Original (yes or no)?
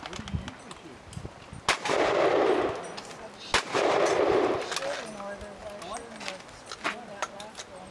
yes